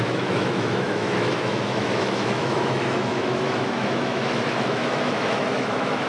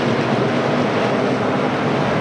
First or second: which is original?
second